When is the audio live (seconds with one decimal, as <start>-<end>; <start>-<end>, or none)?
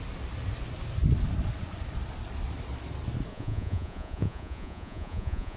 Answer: 0.0-3.3